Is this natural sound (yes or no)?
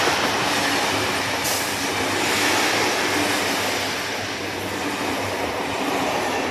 yes